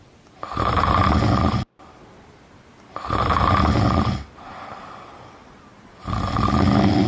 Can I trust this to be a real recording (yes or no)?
yes